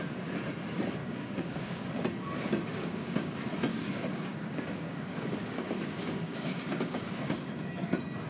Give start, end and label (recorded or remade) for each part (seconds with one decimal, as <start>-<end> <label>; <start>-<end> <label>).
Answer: 0.0-1.0 recorded; 1.0-1.9 remade; 1.9-2.7 recorded; 2.7-3.3 remade; 3.3-3.7 recorded; 3.7-7.7 remade; 7.7-8.3 recorded